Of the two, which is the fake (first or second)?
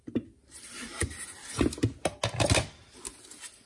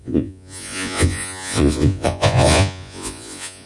second